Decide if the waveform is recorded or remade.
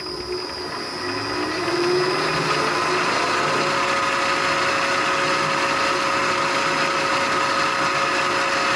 recorded